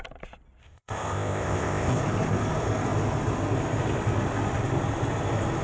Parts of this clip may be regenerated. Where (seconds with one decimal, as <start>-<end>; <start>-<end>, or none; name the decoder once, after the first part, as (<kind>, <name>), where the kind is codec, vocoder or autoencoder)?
0.6-2.0 (codec, ZipCodec)